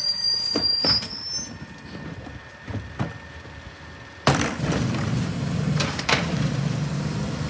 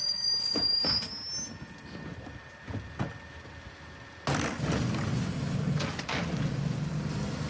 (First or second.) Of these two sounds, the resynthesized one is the first